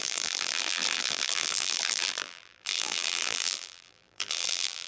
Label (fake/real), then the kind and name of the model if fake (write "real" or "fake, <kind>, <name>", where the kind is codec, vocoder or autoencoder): fake, vocoder, BigVGAN v2